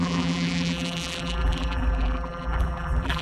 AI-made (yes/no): yes